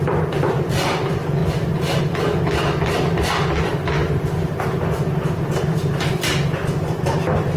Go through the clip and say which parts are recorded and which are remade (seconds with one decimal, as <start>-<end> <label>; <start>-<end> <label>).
0.0-7.6 recorded